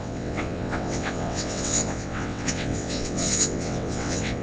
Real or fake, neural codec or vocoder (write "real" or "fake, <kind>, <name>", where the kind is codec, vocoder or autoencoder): fake, vocoder, WaveNeXt